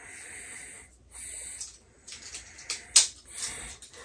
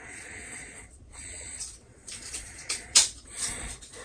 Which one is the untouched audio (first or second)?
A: first